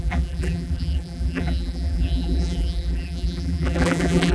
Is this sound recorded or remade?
remade